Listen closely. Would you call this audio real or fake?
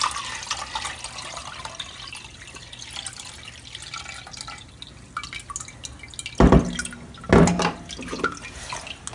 real